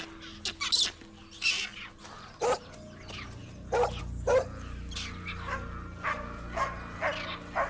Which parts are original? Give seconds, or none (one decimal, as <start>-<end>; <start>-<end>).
0.0-7.7